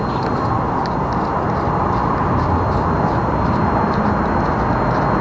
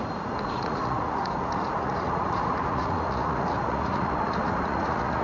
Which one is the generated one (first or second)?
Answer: second